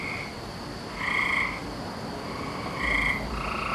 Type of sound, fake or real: real